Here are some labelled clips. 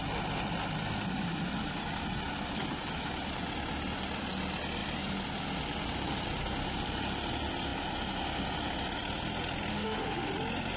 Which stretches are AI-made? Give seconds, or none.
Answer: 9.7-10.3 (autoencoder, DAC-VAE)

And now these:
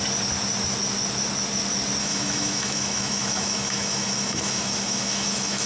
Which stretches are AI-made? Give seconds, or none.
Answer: 2.0-5.7 (autoencoder, DAC-VAE)

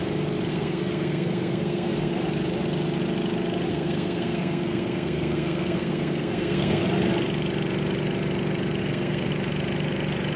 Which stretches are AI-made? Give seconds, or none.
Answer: 0.5-2.1 (codec, SNAC); 3.7-6.8; 8.8-9.3

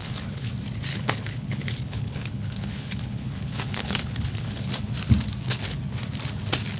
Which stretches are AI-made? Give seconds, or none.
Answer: 0.0-0.5 (codec, HILCodec); 0.9-4.7

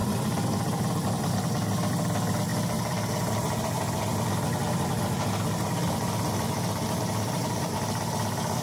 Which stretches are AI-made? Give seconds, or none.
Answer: none

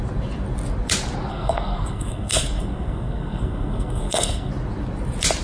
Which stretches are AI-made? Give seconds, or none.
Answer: 1.3-4.5 (codec, SNAC)

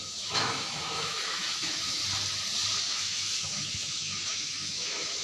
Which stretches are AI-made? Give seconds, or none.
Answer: 0.0-2.0 (autoencoder, DAC-VAE); 2.9-5.2

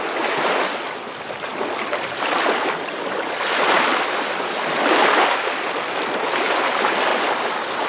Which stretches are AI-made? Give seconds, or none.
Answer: none